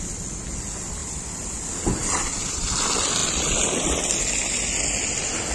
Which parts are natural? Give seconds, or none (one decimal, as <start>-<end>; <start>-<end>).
0.0-2.0; 2.7-5.5